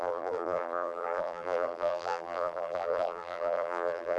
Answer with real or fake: fake